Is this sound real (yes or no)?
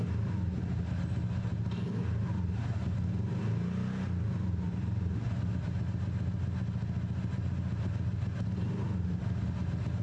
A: yes